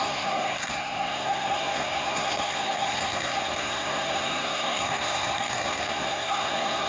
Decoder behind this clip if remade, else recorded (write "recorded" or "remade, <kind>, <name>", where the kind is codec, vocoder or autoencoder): remade, codec, SNAC